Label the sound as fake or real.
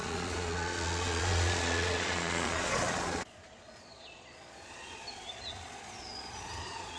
fake